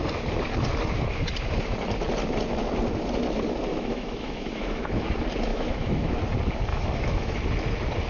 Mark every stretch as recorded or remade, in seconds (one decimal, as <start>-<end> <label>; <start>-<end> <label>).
0.0-3.7 recorded; 3.7-5.1 remade; 5.1-5.5 recorded; 5.5-6.2 remade; 6.2-6.7 recorded; 6.7-7.4 remade; 7.4-8.1 recorded